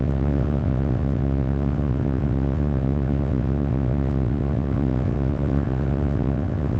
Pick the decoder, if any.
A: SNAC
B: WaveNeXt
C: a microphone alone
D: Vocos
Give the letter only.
B